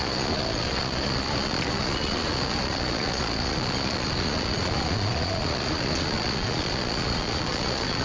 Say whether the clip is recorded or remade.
remade